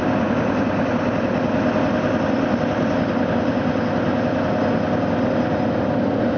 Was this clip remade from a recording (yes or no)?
no